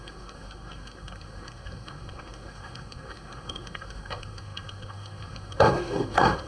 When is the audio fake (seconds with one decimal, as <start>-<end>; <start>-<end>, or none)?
0.0-6.5